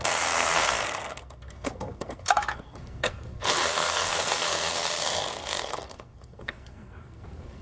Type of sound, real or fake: fake